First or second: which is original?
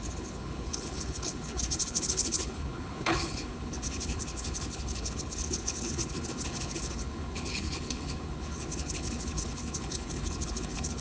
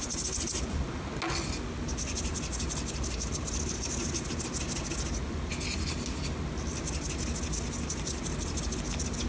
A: second